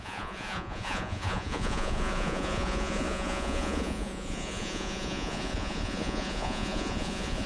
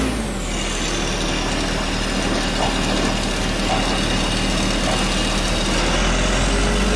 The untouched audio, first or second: second